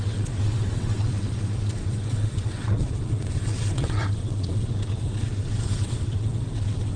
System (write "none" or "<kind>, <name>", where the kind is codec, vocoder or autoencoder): vocoder, WaveNeXt